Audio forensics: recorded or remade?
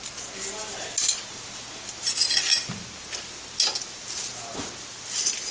recorded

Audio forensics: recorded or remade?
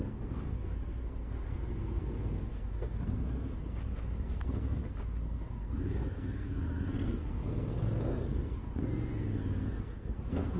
remade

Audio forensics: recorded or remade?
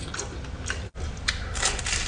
recorded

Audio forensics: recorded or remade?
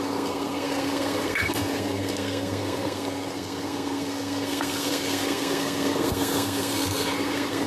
remade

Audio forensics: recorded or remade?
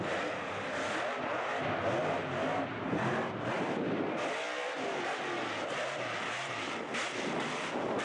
recorded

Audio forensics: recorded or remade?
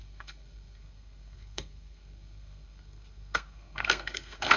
remade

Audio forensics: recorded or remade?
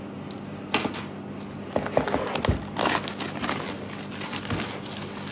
recorded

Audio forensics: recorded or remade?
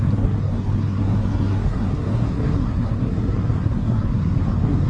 remade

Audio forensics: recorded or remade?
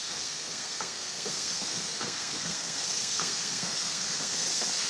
remade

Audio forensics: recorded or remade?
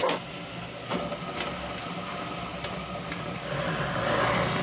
recorded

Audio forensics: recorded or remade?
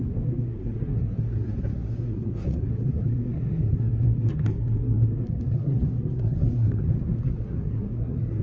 remade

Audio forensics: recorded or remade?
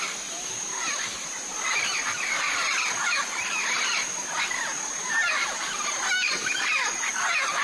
recorded